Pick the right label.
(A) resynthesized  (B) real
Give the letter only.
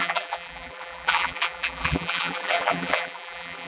A